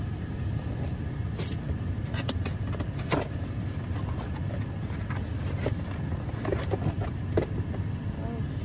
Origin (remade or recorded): recorded